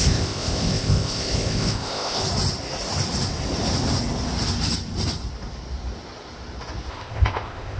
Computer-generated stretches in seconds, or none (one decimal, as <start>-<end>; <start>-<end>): 0.0-2.2; 6.9-7.8